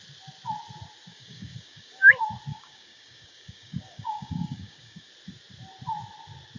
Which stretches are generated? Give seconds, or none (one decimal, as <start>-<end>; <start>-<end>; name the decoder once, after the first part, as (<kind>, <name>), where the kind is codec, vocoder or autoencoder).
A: 1.1-2.1 (codec, DAC); 2.5-5.1